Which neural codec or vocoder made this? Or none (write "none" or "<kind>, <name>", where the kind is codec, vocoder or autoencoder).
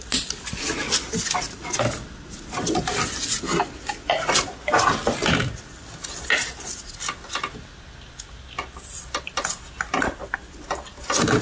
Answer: none